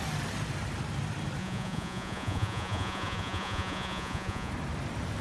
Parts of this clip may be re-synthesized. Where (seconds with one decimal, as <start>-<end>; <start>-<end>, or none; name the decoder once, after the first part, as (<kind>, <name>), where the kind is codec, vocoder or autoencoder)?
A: 1.4-4.5 (vocoder, Vocos)